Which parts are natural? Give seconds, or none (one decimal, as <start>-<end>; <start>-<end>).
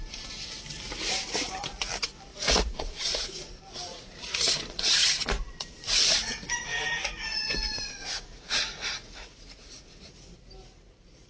0.0-2.3; 3.5-3.9; 4.9-7.3; 10.0-11.3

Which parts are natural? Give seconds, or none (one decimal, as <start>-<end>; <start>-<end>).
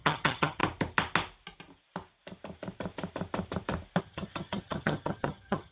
0.6-4.0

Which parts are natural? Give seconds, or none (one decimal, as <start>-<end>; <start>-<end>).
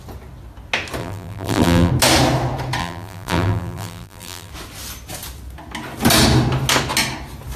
0.0-1.0; 1.9-2.8; 4.5-7.6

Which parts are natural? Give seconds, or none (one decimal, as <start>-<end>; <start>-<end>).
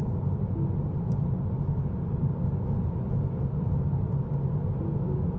0.0-5.4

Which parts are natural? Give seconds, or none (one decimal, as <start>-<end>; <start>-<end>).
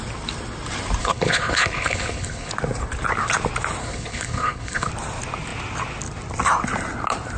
0.0-1.0; 2.5-3.8; 4.9-7.4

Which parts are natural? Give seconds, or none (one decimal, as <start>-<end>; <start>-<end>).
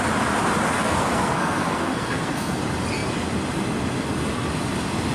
0.0-0.8; 2.6-5.1